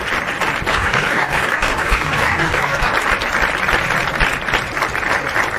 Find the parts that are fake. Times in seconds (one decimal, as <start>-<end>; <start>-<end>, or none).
0.7-2.9